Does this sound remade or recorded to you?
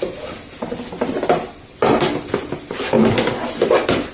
recorded